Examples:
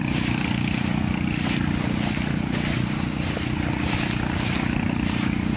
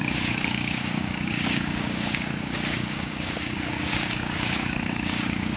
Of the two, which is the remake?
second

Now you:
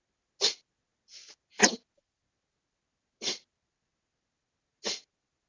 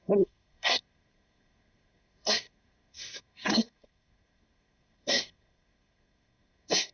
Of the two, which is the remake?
second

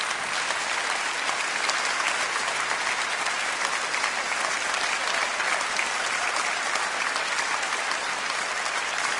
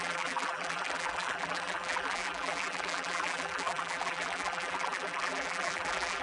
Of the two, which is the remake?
second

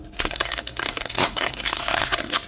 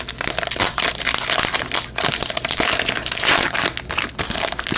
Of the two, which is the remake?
first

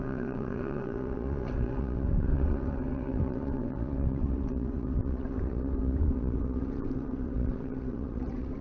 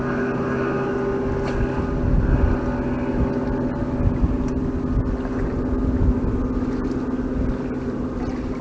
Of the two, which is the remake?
first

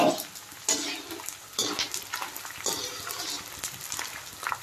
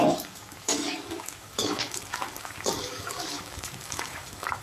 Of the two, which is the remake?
second